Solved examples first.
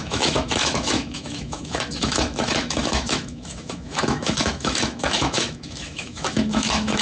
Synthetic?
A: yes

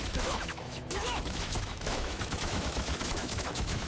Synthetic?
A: yes